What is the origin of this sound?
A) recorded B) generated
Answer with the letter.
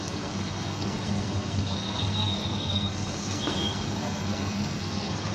B